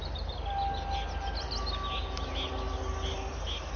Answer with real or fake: real